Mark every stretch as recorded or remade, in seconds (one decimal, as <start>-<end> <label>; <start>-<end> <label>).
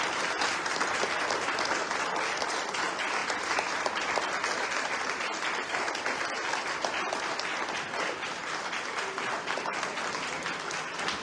0.0-11.2 recorded